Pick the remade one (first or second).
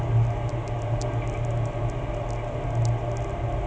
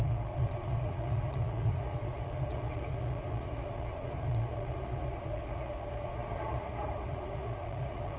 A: second